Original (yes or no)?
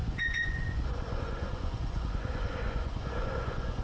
no